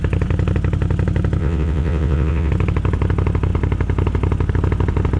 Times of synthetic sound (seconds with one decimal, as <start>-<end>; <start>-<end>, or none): 1.4-2.5